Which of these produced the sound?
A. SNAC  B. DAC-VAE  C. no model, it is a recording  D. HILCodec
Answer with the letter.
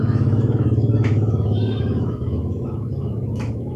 B